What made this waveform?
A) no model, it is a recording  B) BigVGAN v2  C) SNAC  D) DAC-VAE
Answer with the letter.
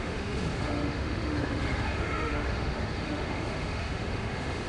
D